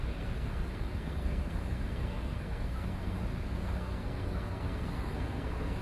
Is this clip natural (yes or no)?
no